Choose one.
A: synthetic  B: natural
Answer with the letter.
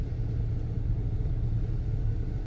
B